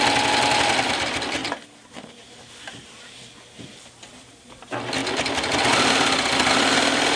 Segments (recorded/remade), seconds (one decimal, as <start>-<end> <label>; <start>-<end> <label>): 0.0-7.2 recorded